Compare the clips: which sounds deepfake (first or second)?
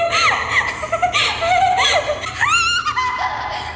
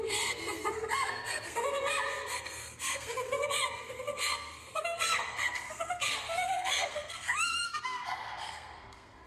second